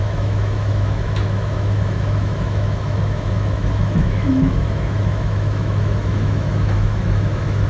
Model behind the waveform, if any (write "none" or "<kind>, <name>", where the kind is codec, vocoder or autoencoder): autoencoder, DAC-VAE